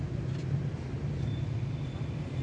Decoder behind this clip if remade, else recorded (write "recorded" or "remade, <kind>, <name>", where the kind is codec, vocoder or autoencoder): recorded